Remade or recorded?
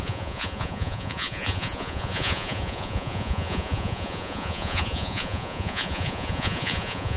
remade